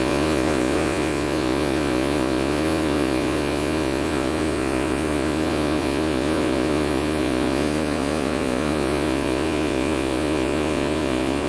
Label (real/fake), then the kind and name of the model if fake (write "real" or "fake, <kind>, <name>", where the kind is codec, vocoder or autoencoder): fake, vocoder, Vocos